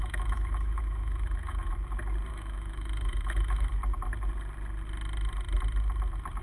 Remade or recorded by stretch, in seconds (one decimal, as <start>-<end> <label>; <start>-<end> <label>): 0.0-1.7 remade; 1.7-2.3 recorded; 2.3-3.8 remade; 3.8-6.4 recorded